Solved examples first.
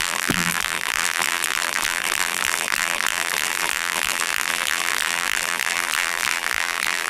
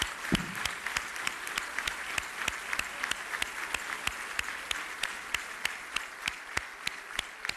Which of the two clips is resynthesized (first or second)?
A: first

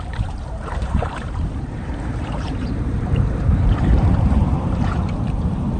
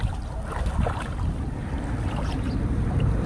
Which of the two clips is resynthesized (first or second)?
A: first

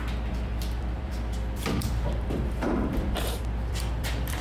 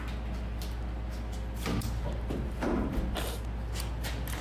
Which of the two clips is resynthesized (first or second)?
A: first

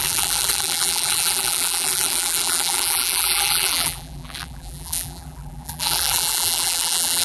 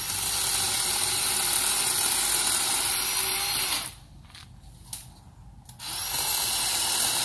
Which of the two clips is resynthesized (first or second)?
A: first